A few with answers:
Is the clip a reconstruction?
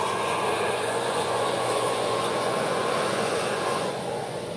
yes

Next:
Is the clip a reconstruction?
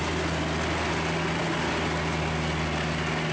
no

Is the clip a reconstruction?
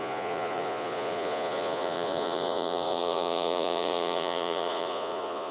yes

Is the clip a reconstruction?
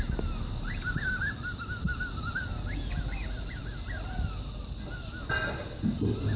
no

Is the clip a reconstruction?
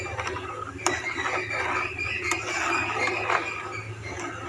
no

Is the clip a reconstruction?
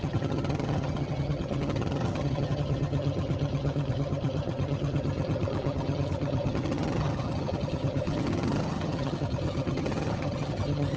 yes